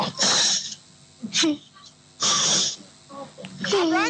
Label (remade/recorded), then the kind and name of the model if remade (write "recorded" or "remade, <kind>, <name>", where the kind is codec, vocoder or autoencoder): recorded